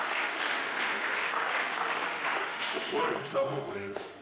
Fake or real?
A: fake